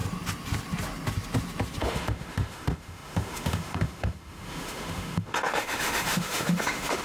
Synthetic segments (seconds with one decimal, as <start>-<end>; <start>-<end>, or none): 1.8-7.0